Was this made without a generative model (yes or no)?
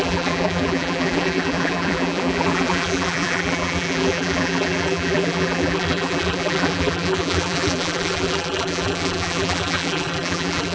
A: no